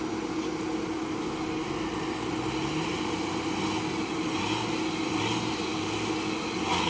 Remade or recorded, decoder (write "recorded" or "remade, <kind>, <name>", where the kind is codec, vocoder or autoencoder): recorded